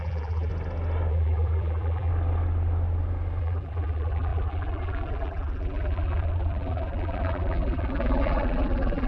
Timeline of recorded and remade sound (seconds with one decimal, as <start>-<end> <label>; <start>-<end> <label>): 0.0-0.5 remade; 0.5-1.1 recorded; 1.1-2.1 remade; 2.1-3.4 recorded; 3.4-9.1 remade